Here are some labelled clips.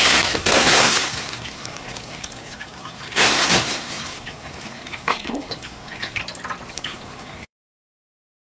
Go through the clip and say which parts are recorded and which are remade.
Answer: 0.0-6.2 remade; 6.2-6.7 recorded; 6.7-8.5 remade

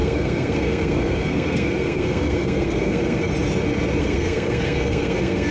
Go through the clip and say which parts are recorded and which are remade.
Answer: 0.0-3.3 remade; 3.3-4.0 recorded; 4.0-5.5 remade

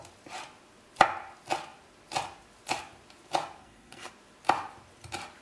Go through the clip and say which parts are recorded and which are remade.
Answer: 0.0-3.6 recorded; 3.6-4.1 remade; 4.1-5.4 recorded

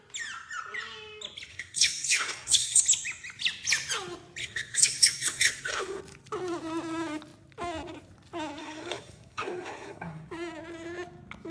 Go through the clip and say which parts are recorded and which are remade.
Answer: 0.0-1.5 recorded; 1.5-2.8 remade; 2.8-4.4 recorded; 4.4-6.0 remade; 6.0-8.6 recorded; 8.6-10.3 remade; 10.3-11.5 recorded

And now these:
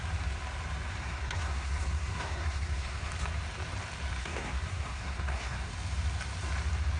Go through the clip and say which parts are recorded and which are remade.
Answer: 0.0-1.0 recorded; 1.0-3.1 remade; 3.1-4.2 recorded; 4.2-5.7 remade; 5.7-7.0 recorded

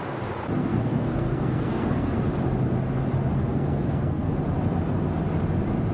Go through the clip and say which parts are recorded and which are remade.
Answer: 0.0-0.6 recorded; 0.6-2.2 remade; 2.2-3.3 recorded; 3.3-4.3 remade; 4.3-5.9 recorded

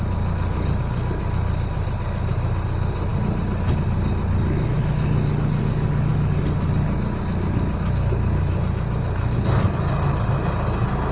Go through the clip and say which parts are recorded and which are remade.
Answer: 0.0-11.1 recorded

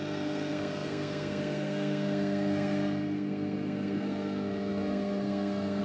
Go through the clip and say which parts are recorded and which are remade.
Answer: 0.0-5.8 remade